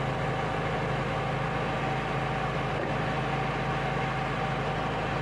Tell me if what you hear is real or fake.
real